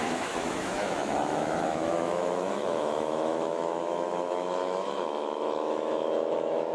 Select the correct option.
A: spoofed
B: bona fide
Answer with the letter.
A